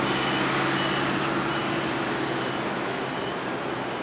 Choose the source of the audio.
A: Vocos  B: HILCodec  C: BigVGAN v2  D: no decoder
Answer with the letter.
D